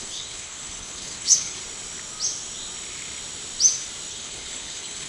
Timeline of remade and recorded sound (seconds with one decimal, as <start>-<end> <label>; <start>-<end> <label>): 0.0-1.6 remade; 1.6-4.1 recorded; 4.1-5.1 remade